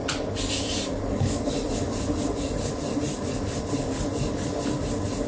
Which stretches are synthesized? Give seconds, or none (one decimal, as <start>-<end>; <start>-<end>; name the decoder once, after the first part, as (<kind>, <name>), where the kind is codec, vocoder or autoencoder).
none